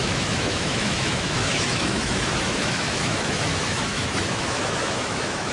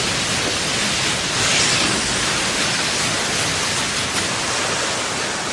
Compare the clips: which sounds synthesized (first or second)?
first